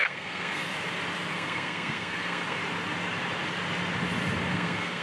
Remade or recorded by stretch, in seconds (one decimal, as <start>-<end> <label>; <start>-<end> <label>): 0.0-0.7 remade; 0.7-1.3 recorded; 1.3-2.6 remade; 2.6-4.5 recorded; 4.5-5.0 remade